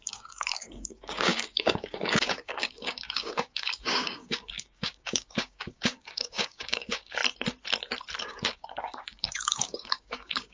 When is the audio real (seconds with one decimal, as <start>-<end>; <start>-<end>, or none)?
7.2-8.2